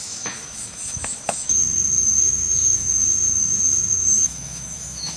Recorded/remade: remade